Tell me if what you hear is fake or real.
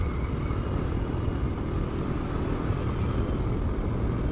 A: real